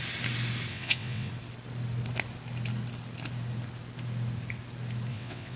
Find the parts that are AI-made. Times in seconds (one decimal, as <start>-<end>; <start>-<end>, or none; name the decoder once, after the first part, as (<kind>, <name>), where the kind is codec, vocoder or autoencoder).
0.7-1.3 (vocoder, WaveNeXt); 5.1-5.6